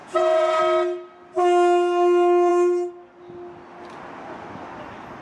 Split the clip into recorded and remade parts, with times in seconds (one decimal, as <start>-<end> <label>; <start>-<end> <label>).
0.0-0.6 remade; 0.6-5.2 recorded